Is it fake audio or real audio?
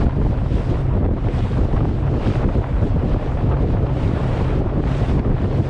fake